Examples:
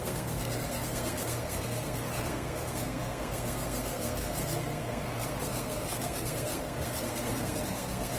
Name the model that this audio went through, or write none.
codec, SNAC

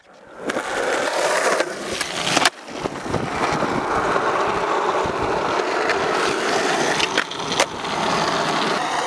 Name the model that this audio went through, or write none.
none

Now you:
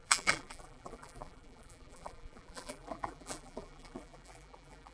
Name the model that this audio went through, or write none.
vocoder, BigVGAN v2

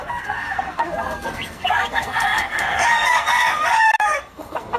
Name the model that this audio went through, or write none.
codec, SNAC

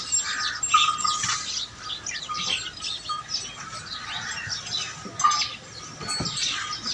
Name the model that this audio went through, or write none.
none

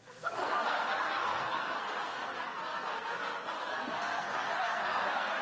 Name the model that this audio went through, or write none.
codec, SNAC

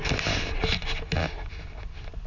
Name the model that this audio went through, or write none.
none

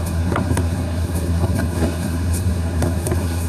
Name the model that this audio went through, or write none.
codec, SNAC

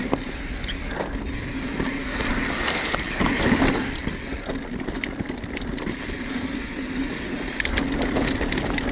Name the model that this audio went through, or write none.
none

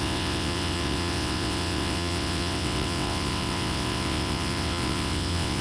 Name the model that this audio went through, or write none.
vocoder, WaveNeXt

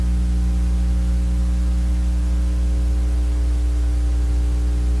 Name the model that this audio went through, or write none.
none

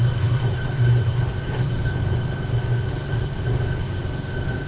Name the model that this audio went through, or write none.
codec, SNAC